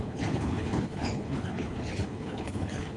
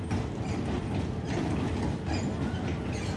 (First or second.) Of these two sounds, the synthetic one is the first